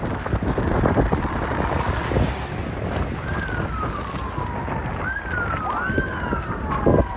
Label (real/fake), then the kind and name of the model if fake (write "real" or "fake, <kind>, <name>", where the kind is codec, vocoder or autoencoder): real